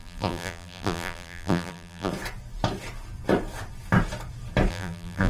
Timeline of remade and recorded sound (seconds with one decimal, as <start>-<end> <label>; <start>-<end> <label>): 0.0-2.1 remade; 2.1-4.7 recorded; 4.7-5.3 remade